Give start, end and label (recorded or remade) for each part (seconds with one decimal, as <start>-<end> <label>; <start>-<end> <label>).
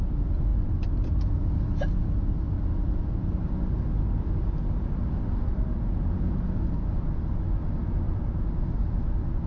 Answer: 0.0-9.5 recorded